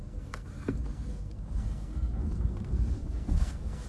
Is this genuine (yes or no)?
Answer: no